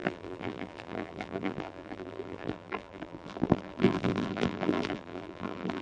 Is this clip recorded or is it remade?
remade